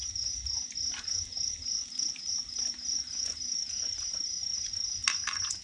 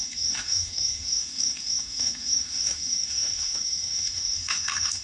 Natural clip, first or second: first